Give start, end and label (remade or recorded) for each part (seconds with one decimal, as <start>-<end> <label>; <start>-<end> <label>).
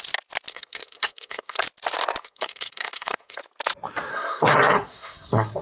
0.0-0.5 recorded; 0.5-1.6 remade; 1.6-2.2 recorded; 2.2-3.4 remade; 3.4-4.1 recorded; 4.1-5.6 remade